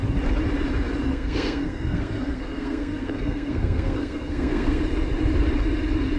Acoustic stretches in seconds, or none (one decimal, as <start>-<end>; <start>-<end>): 0.0-1.1; 4.8-6.2